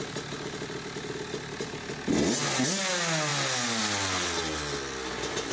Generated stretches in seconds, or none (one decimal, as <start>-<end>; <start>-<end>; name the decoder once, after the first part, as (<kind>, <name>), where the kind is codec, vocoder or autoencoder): none